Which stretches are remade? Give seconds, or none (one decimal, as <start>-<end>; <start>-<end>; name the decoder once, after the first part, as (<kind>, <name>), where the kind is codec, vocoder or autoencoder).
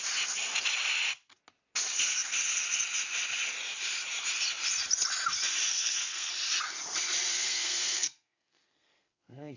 5.7-6.3 (codec, SNAC); 7.3-9.6